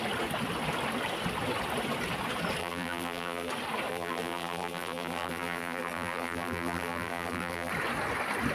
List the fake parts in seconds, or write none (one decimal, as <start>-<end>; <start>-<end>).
2.6-3.5; 3.9-7.7